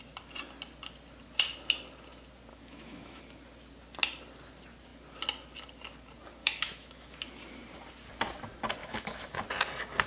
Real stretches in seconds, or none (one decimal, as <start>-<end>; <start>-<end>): 0.0-2.5; 3.2-6.4; 7.1-8.8; 9.4-10.1